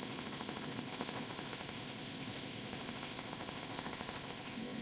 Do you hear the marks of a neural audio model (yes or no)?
yes